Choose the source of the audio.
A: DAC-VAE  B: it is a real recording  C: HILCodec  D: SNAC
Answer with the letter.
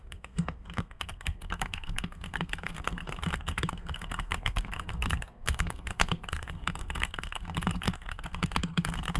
D